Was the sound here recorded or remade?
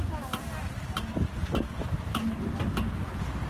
recorded